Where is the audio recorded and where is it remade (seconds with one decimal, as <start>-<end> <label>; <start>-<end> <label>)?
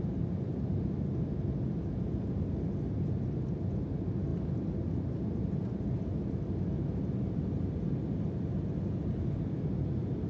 0.0-10.3 recorded